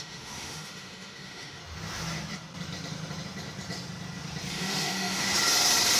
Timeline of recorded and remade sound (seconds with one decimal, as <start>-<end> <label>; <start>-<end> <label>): 0.0-1.6 remade; 1.6-4.5 recorded; 4.5-5.3 remade; 5.3-6.0 recorded